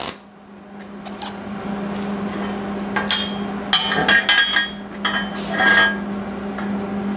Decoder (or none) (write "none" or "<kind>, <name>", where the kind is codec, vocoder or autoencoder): none